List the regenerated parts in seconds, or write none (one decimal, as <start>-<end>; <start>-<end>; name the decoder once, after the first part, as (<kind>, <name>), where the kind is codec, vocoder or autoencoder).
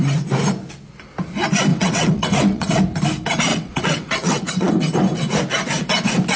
1.7-2.8 (vocoder, WaveNeXt); 3.5-4.7